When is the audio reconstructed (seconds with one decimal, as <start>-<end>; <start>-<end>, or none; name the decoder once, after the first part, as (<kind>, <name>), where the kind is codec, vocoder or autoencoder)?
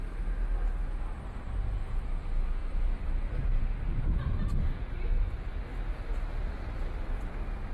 0.8-1.9 (vocoder, BigVGAN v2); 2.6-3.6; 6.4-7.7